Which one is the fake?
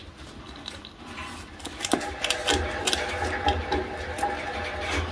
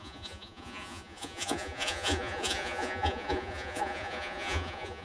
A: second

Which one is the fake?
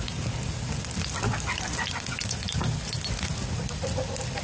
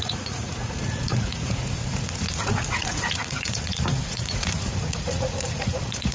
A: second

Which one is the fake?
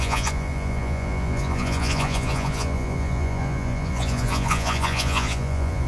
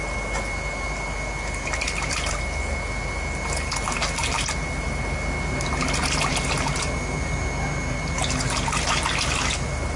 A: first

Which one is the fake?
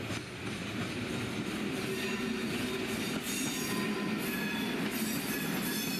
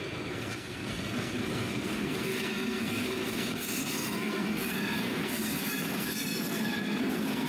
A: second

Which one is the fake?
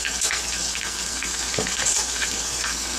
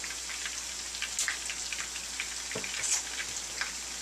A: first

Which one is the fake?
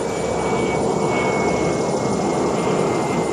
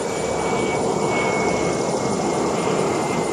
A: second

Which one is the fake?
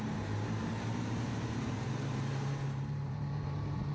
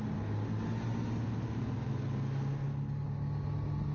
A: first